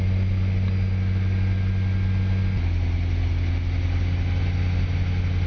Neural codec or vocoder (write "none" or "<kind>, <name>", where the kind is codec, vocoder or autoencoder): none